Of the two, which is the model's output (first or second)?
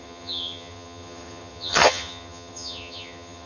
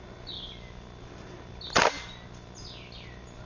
first